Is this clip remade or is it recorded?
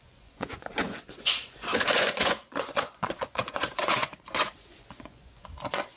remade